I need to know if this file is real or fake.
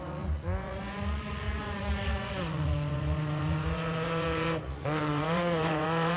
fake